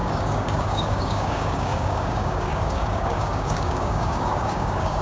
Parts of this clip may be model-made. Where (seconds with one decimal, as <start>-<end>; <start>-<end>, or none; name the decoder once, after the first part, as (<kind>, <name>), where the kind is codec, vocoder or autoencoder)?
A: 0.0-5.0 (codec, DAC)